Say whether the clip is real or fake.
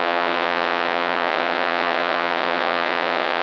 fake